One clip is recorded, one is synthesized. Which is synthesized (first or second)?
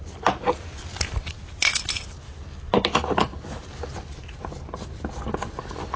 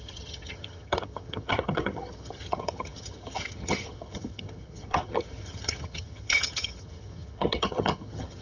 second